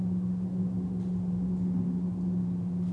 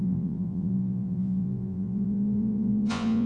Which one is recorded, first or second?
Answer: first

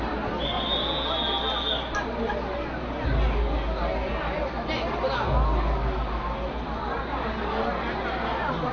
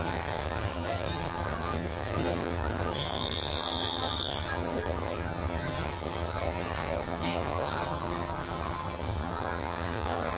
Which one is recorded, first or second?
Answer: first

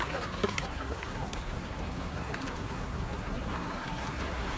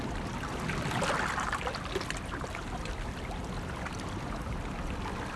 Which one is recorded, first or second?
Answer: second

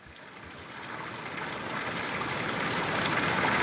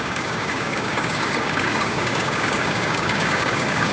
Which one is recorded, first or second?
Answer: first